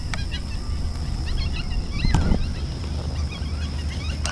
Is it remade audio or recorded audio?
recorded